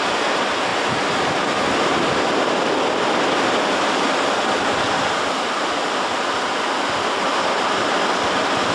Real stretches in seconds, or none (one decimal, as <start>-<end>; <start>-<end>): 0.0-8.7